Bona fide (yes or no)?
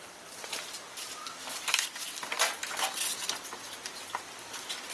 yes